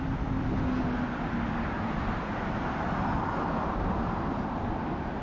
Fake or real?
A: real